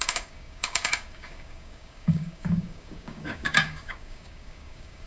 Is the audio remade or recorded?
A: remade